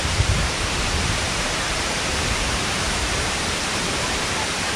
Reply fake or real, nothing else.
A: fake